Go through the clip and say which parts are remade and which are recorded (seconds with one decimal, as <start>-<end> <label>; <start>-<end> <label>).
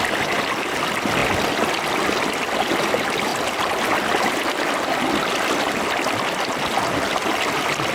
0.0-7.9 recorded